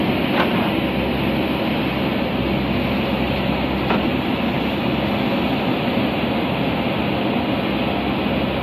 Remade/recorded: recorded